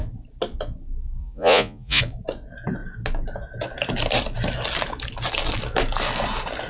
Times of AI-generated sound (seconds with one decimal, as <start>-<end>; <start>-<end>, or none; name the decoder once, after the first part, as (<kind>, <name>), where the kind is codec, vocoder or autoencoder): 1.2-2.0 (vocoder, Vocos)